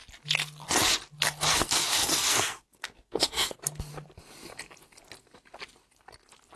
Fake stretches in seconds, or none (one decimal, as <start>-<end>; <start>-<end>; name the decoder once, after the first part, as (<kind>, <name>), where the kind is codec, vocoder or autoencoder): 1.5-3.9 (codec, SNAC)